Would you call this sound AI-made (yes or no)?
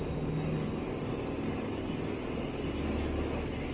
no